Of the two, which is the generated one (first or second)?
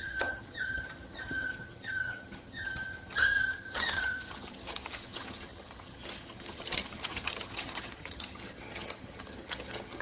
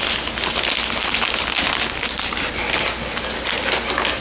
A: first